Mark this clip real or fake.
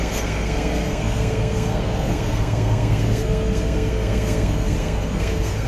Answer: fake